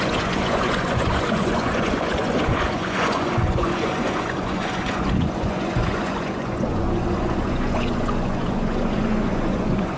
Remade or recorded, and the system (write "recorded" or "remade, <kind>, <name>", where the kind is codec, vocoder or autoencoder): remade, vocoder, Vocos